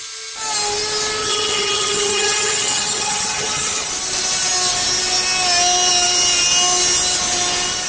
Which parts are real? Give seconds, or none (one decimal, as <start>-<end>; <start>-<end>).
0.0-1.2; 3.9-7.9